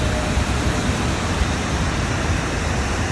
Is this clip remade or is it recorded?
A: recorded